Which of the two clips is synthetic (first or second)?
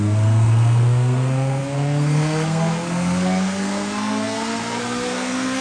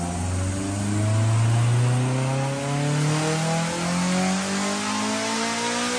first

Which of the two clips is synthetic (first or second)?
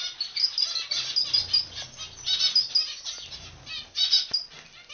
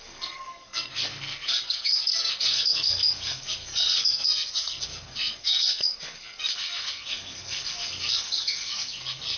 second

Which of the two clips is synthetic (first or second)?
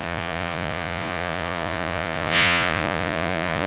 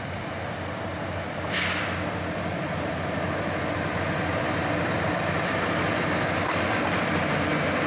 first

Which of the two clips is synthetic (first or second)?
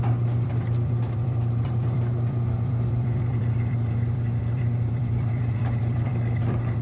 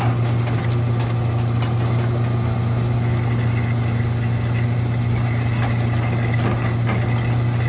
first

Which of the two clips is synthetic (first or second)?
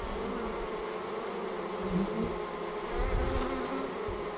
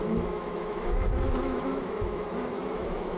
second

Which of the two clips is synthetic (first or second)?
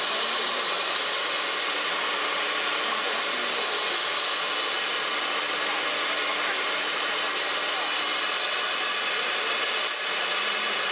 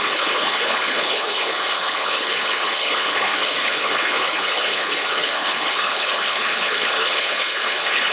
second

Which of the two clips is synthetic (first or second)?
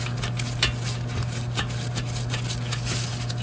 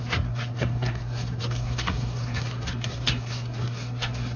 second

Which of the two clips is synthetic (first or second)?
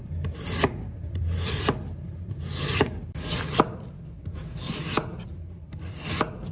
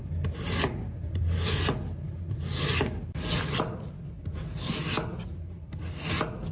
first